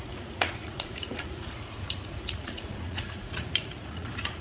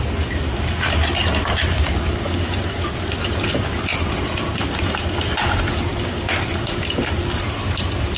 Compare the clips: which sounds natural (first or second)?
second